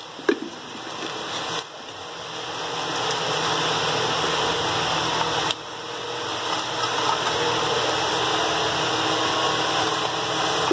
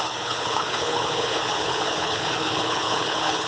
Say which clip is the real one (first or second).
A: first